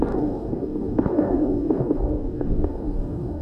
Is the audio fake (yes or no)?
yes